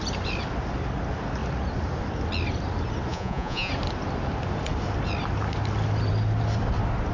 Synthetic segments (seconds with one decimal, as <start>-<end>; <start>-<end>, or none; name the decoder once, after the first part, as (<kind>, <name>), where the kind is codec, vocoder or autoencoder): 3.1-3.7 (vocoder, Vocos)